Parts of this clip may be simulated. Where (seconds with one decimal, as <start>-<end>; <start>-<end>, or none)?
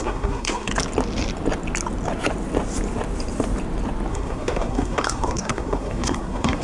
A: 0.0-0.7; 4.1-6.6